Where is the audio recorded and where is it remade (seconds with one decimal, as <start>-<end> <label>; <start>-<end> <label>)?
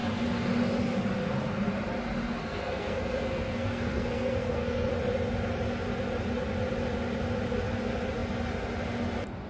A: 0.0-2.4 recorded; 2.4-4.9 remade; 4.9-9.5 recorded